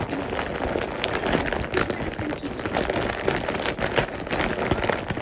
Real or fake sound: real